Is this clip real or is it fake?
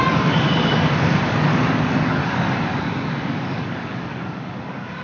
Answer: fake